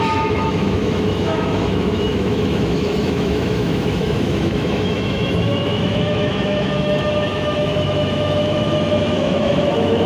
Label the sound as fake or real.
fake